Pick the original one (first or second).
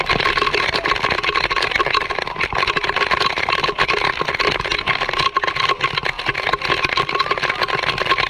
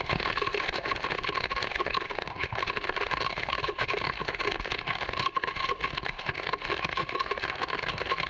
first